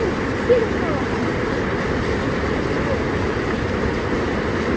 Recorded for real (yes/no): yes